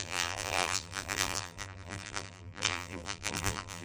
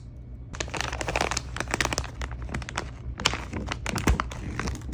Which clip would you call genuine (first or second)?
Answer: second